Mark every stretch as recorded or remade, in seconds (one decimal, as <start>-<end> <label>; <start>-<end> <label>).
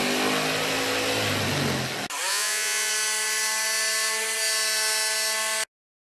0.0-2.3 recorded; 2.3-2.9 remade; 2.9-6.2 recorded